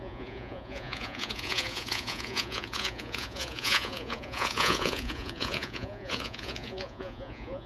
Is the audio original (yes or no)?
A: no